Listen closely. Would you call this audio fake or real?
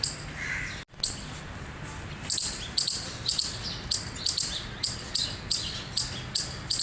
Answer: real